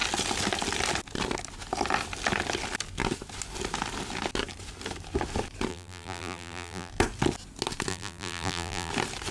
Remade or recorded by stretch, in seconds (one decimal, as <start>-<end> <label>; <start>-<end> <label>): 0.0-5.7 recorded; 5.7-6.9 remade; 6.9-7.9 recorded; 7.9-8.9 remade; 8.9-9.3 recorded